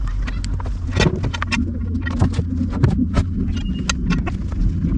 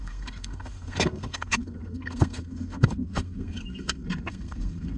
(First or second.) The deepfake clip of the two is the second